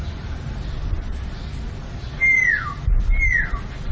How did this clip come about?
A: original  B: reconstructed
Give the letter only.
A